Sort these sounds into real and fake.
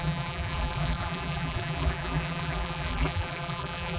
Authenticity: fake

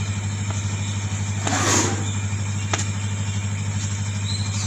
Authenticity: real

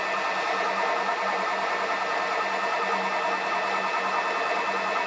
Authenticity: real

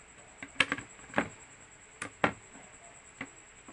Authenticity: real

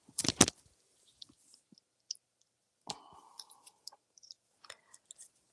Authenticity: real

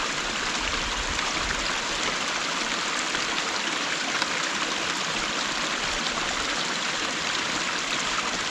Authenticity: fake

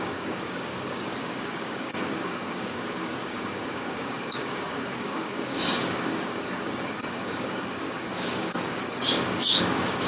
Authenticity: fake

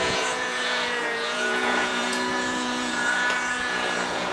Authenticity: fake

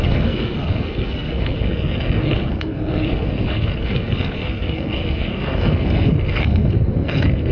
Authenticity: fake